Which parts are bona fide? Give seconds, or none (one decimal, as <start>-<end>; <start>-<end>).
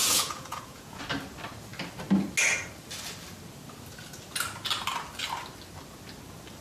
1.0-6.6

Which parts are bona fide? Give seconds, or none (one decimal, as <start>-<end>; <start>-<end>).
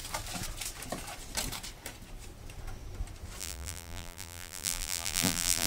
0.0-3.4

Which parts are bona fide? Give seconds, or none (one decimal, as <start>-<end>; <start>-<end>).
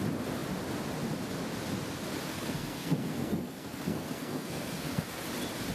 0.0-2.3; 5.2-5.7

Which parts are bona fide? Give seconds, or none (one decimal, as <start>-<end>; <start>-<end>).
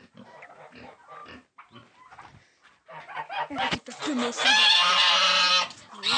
0.0-6.2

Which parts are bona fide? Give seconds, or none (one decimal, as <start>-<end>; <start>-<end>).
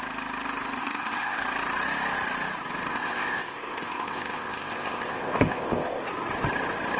0.0-0.8; 1.4-2.9; 6.0-7.0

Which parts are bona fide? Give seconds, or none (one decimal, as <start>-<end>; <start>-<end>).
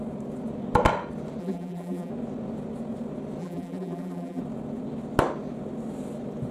0.0-1.4; 2.1-3.4; 4.4-6.5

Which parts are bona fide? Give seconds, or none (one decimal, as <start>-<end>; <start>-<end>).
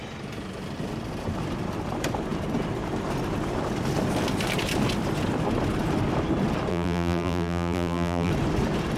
0.0-6.7; 8.3-9.0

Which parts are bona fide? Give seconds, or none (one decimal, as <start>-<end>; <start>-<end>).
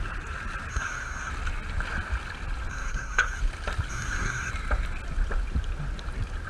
0.0-0.7; 1.3-2.7; 3.4-3.9; 4.5-6.5